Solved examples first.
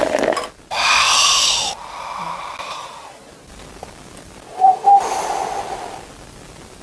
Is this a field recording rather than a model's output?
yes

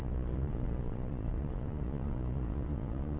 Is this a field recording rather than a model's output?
no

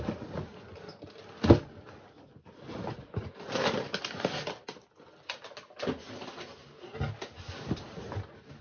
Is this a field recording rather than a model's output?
yes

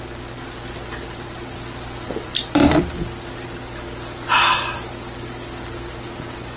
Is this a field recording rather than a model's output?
yes